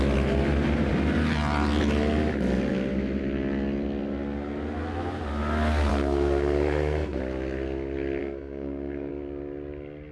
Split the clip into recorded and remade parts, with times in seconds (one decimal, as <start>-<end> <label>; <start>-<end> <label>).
0.0-5.9 recorded; 5.9-7.2 remade; 7.2-8.2 recorded; 8.2-9.1 remade; 9.1-10.1 recorded